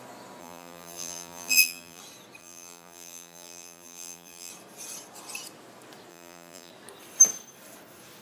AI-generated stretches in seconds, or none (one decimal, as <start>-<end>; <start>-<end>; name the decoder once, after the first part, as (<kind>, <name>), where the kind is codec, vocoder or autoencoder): 0.4-2.0 (vocoder, BigVGAN v2); 2.4-4.5; 6.1-6.7